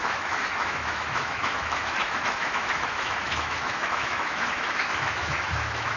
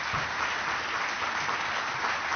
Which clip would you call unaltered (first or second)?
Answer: second